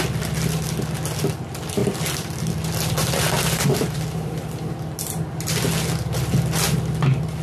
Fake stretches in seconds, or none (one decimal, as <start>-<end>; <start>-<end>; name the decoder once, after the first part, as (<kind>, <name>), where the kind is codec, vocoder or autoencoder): 1.8-4.7 (vocoder, BigVGAN v2)

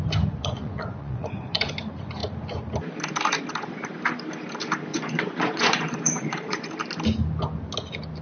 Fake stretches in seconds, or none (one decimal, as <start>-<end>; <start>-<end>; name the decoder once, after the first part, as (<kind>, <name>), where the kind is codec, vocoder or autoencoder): 0.4-1.7 (vocoder, Vocos); 4.9-6.7

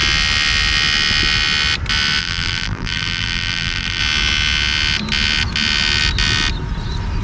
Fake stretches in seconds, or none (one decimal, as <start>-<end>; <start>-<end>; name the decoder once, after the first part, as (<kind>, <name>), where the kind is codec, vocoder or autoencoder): 2.2-4.0 (vocoder, BigVGAN v2)